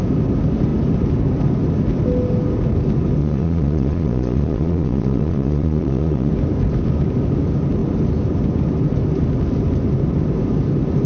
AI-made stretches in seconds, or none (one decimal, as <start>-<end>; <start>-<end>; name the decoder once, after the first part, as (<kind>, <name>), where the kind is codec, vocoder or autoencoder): 3.2-6.3 (vocoder, Vocos)